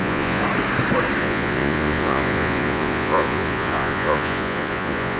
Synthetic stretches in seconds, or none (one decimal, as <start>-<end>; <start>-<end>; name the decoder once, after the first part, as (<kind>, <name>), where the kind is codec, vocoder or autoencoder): 0.0-0.4 (vocoder, Vocos); 1.2-5.2